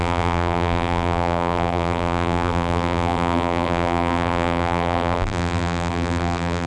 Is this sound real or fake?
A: fake